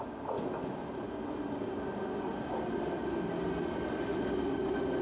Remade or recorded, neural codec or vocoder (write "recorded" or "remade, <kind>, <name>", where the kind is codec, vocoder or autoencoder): recorded